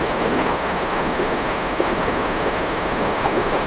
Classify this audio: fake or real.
fake